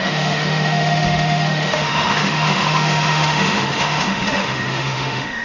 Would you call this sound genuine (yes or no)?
no